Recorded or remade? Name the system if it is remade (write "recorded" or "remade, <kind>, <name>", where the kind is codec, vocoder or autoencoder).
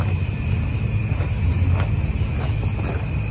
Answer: recorded